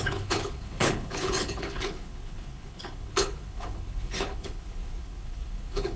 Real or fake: fake